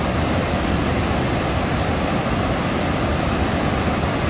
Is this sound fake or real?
real